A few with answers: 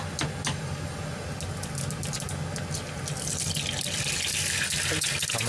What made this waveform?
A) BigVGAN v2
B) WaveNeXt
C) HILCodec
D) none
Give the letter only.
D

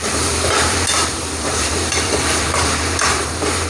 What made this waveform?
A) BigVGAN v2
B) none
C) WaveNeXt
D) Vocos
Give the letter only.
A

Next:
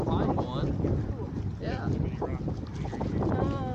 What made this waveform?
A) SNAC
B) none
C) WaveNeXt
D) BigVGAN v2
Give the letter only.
B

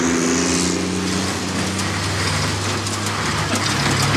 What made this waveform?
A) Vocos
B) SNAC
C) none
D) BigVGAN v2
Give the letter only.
C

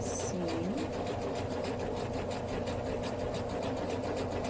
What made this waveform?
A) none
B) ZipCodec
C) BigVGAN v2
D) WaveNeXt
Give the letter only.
A